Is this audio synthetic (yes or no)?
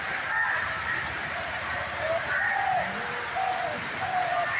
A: no